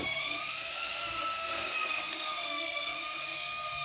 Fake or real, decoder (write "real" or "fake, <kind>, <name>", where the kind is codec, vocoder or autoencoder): fake, codec, SNAC